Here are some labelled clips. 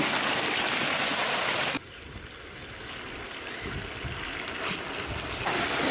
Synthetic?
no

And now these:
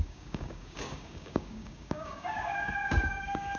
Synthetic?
yes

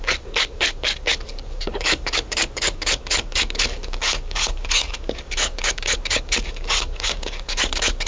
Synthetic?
yes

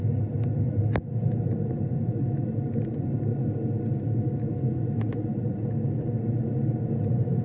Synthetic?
no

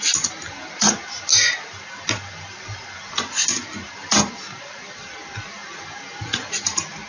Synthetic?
no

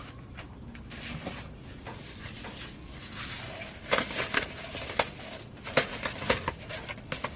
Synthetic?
no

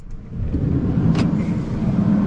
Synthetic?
no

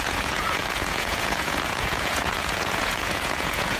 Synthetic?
yes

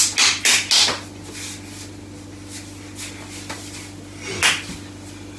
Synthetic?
no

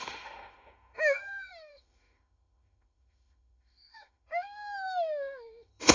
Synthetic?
yes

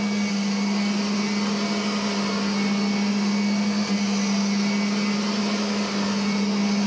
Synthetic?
no